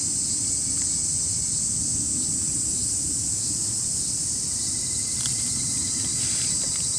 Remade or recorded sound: recorded